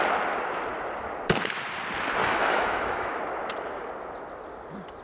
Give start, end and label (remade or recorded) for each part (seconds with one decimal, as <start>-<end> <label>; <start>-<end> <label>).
0.0-2.2 recorded; 2.2-3.2 remade; 3.2-5.0 recorded